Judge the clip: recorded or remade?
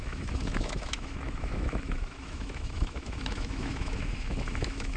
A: remade